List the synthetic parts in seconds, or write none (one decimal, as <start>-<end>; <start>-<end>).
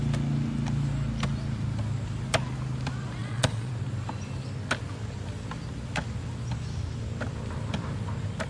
3.2-3.7